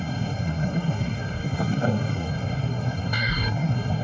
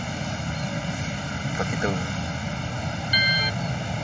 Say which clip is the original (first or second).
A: second